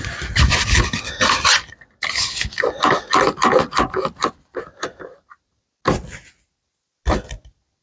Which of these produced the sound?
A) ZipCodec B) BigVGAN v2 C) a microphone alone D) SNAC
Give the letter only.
C